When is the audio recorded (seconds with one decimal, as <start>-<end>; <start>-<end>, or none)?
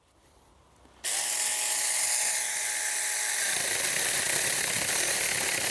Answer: 0.0-5.7